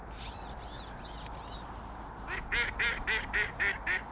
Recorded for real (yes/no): yes